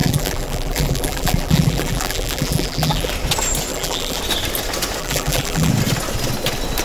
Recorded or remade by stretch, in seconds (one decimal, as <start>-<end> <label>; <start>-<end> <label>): 0.0-3.1 remade; 3.1-3.7 recorded; 3.7-4.2 remade; 4.2-5.0 recorded; 5.0-5.7 remade; 5.7-6.8 recorded